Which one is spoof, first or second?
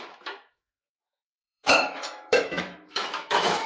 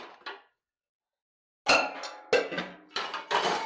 first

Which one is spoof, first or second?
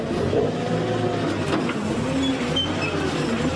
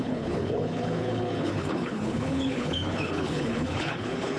second